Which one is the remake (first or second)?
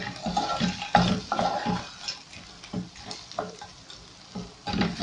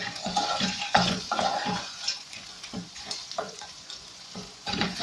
second